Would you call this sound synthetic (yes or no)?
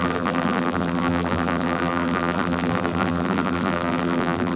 yes